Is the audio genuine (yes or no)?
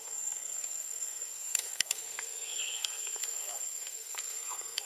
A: no